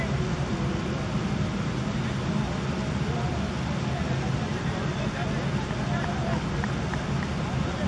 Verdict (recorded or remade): recorded